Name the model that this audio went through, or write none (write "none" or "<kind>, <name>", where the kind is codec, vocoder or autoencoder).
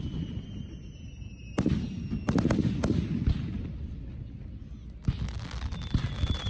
none